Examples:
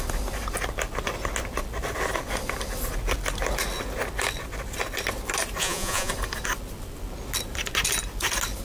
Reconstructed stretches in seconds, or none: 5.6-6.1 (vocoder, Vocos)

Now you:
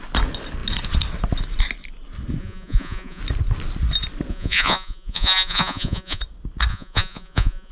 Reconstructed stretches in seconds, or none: 2.4-3.2 (vocoder, Vocos); 4.3-6.2; 6.7-7.7

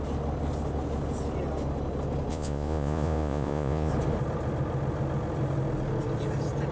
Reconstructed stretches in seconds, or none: 2.3-3.9 (vocoder, Vocos)